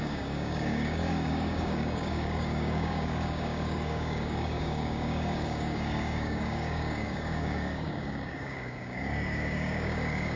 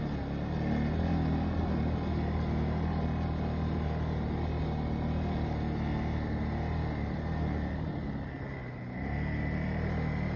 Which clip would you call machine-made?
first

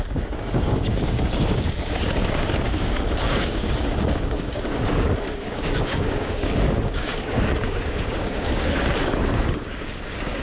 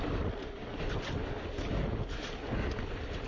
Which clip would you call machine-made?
first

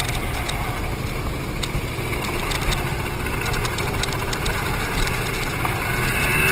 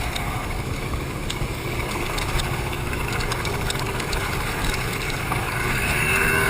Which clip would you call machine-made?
second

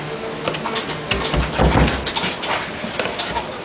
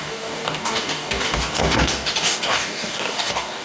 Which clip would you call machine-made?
second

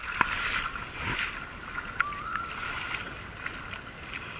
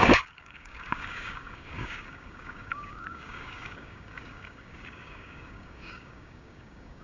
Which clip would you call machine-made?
second